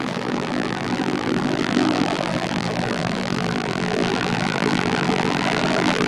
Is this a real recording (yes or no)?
no